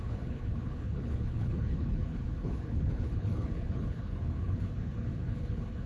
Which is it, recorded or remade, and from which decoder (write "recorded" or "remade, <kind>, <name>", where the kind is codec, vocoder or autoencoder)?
remade, codec, HILCodec